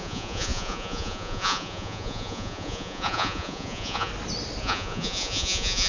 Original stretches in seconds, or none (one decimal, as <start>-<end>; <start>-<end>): 4.1-4.6